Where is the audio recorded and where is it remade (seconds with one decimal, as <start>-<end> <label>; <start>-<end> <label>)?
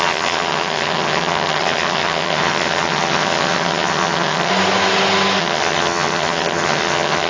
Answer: 0.0-4.5 remade; 4.5-5.4 recorded; 5.4-7.3 remade